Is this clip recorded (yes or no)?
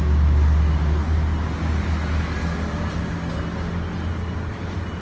yes